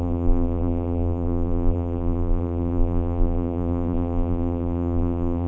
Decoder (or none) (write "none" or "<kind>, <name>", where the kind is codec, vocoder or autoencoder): vocoder, BigVGAN v2